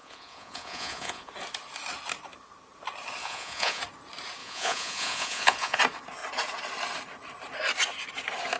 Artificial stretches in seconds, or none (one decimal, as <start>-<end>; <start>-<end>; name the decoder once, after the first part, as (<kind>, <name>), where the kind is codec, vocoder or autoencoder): 0.0-1.3 (vocoder, Vocos); 3.2-3.8; 4.4-5.8